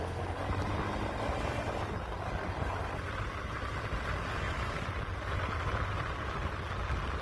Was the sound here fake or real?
real